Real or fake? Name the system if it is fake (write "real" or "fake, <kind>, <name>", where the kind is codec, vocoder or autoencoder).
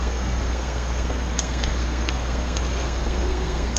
fake, codec, SNAC